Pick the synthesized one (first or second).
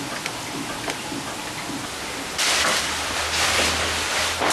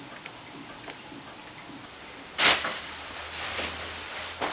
second